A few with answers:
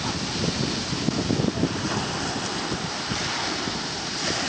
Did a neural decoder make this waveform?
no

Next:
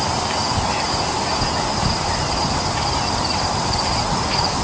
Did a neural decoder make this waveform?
no